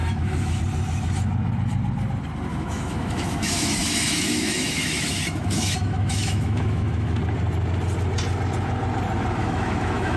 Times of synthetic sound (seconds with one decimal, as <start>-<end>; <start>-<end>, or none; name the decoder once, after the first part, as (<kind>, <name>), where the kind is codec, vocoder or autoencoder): 0.0-0.6 (autoencoder, DAC-VAE); 2.5-7.2; 9.4-10.2